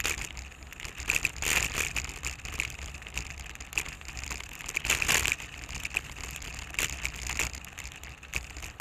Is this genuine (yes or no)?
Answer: yes